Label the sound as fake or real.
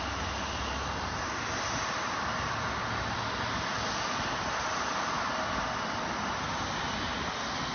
real